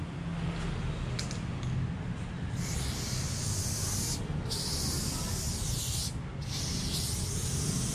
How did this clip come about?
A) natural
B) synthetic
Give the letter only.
A